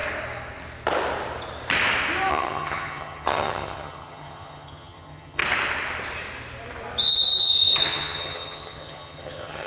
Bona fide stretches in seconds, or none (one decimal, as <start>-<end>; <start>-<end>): 0.0-2.3; 5.4-7.4